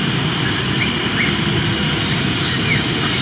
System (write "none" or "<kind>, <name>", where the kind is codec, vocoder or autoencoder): none